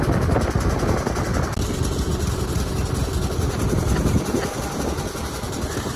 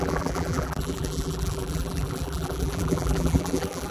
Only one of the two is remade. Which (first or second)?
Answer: second